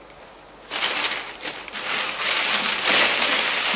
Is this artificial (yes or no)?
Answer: no